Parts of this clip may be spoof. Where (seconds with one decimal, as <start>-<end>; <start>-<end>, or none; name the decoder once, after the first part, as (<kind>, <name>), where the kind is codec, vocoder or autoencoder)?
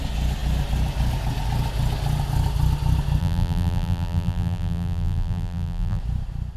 3.2-6.0 (vocoder, BigVGAN v2)